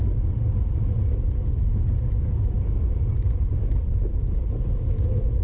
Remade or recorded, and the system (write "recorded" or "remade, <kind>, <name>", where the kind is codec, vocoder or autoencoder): recorded